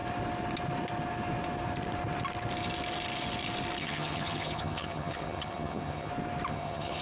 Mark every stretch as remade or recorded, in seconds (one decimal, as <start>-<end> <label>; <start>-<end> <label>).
0.0-3.8 recorded; 3.8-6.1 remade; 6.1-6.5 recorded; 6.5-7.0 remade